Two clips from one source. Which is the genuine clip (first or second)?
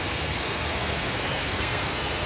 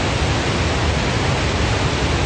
second